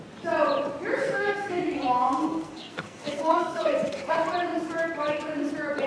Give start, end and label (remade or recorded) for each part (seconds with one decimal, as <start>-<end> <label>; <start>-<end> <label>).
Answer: 0.0-1.0 recorded; 1.0-4.1 remade; 4.1-5.9 recorded

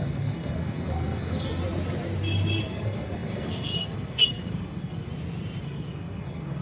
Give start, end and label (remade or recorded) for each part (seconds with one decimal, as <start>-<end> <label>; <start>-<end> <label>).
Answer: 0.0-1.6 remade; 1.6-2.6 recorded; 2.6-5.1 remade; 5.1-5.6 recorded; 5.6-6.6 remade

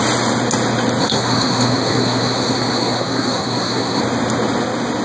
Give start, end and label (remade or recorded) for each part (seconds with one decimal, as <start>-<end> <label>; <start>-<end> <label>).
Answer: 0.0-1.0 recorded; 1.0-4.0 remade; 4.0-5.0 recorded

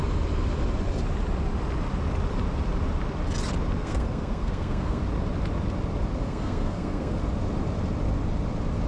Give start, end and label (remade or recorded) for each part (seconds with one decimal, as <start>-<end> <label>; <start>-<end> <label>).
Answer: 0.0-3.8 recorded; 3.8-5.0 remade; 5.0-6.2 recorded; 6.2-7.2 remade; 7.2-8.9 recorded

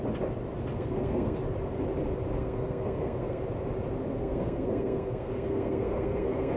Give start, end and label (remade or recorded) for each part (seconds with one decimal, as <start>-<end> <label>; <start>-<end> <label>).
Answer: 0.0-0.7 recorded; 0.7-1.4 remade; 1.4-2.4 recorded; 2.4-3.4 remade; 3.4-4.1 recorded; 4.1-6.6 remade

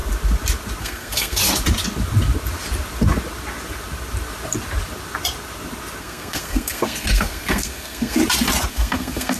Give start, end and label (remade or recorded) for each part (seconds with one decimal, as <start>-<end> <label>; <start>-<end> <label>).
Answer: 0.0-0.8 recorded; 0.8-1.4 remade; 1.4-6.0 recorded; 6.0-8.2 remade; 8.2-8.7 recorded; 8.7-9.4 remade

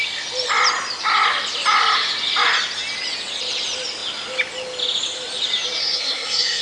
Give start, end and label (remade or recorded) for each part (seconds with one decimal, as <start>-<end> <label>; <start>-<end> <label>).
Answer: 0.0-5.8 recorded; 5.8-6.6 remade

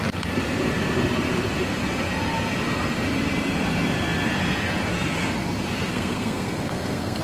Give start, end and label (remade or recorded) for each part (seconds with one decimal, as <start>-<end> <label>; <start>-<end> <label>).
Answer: 0.0-5.9 recorded; 5.9-7.2 remade